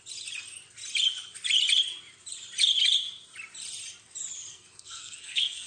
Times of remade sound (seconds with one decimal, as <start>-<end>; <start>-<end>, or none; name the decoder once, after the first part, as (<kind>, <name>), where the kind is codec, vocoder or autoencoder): 4.5-5.7 (codec, SNAC)